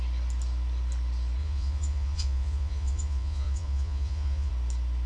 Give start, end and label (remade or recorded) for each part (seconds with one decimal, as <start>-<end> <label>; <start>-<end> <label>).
0.0-1.4 recorded; 1.4-4.5 remade; 4.5-5.1 recorded